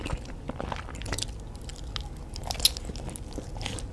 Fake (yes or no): no